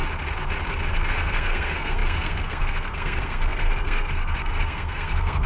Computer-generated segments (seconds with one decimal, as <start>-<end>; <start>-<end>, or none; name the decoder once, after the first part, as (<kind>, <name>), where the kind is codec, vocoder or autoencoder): 0.9-5.5 (codec, SNAC)